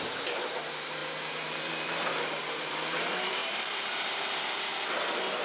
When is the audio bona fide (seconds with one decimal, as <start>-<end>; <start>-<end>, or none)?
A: 4.7-5.4